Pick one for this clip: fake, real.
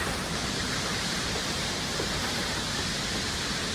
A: fake